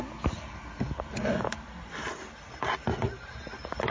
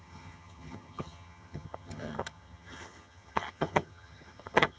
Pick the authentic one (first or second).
first